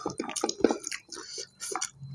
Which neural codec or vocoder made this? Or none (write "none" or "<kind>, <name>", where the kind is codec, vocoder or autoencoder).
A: none